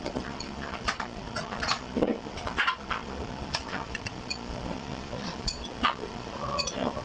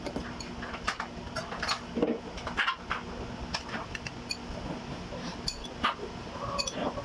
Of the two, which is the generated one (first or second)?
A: first